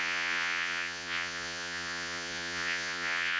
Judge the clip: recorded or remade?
remade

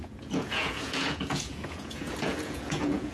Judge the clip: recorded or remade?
remade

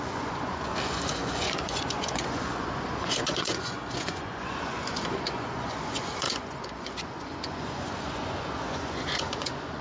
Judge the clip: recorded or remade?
remade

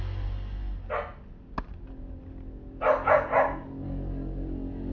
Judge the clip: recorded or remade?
recorded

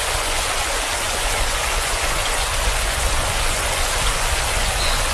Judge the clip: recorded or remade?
remade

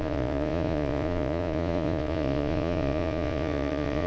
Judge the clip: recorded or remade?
remade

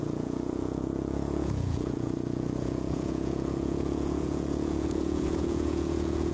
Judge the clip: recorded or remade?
remade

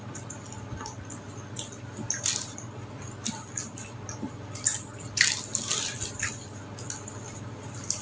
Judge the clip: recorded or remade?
recorded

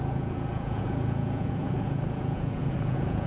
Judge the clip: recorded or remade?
remade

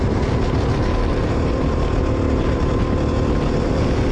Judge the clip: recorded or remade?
recorded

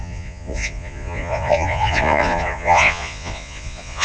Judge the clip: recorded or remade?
remade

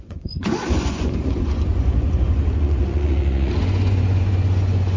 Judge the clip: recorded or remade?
remade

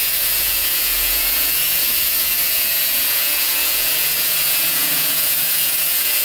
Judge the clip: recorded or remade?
remade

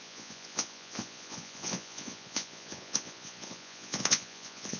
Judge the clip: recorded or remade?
remade